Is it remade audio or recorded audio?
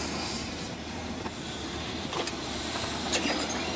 remade